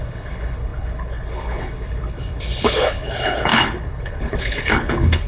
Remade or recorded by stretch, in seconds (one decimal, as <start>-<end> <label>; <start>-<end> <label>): 0.0-5.3 remade